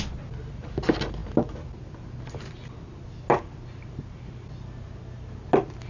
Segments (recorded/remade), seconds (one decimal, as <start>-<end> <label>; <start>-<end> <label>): 0.0-5.9 recorded

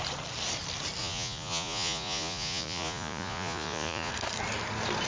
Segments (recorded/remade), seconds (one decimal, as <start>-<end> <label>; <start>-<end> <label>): 0.0-1.0 recorded; 1.0-4.1 remade; 4.1-5.1 recorded

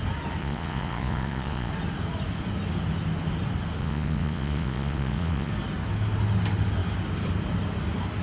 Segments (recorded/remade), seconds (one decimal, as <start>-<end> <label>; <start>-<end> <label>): 0.0-0.4 recorded; 0.4-1.7 remade; 1.7-3.8 recorded; 3.8-5.5 remade; 5.5-8.2 recorded

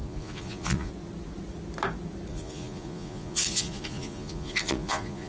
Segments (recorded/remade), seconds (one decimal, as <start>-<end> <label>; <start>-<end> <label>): 0.0-0.9 remade; 0.9-2.3 recorded; 2.3-5.3 remade

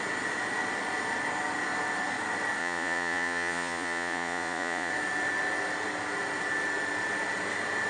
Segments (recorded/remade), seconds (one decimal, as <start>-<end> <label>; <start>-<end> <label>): 0.0-2.6 recorded; 2.6-4.9 remade; 4.9-7.9 recorded

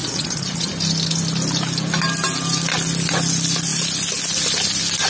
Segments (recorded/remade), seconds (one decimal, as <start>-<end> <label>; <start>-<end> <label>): 0.0-0.7 remade; 0.7-5.1 recorded

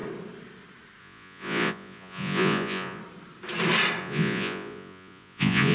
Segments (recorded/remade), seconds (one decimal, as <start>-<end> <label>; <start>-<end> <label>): 0.0-1.0 recorded; 1.0-3.0 remade; 3.0-4.0 recorded; 4.0-5.7 remade

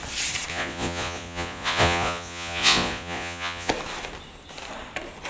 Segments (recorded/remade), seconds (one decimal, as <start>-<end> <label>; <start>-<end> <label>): 0.0-0.5 recorded; 0.5-3.7 remade; 3.7-5.3 recorded